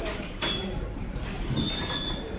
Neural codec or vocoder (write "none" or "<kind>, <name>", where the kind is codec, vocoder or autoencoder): none